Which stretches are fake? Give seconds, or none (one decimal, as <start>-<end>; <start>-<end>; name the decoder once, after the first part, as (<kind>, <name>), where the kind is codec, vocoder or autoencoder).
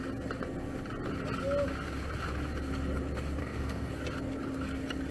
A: 3.4-3.9 (codec, DAC)